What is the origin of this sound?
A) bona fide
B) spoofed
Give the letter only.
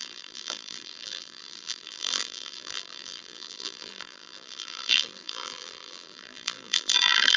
B